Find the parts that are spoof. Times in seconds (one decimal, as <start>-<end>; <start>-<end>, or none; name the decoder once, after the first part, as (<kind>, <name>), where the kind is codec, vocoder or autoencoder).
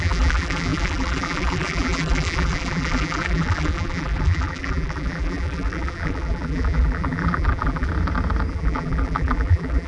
0.0-7.9 (vocoder, BigVGAN v2); 8.5-9.9